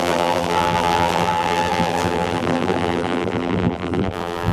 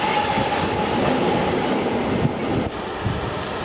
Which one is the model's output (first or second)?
first